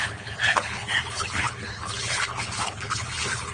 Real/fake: fake